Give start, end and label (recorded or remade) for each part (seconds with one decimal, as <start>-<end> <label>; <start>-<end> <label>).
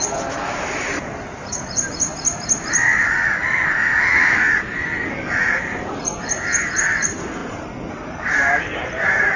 0.0-2.1 remade; 2.1-5.6 recorded; 5.6-9.4 remade